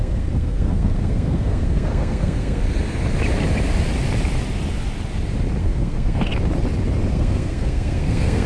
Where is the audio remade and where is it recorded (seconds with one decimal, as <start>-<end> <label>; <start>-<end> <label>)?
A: 0.0-2.6 remade; 2.6-5.6 recorded; 5.6-6.3 remade; 6.3-7.1 recorded; 7.1-8.5 remade